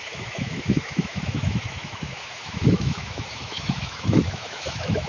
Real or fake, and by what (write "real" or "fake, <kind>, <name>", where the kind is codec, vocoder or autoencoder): fake, autoencoder, DAC-VAE